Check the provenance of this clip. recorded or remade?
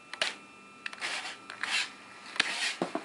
recorded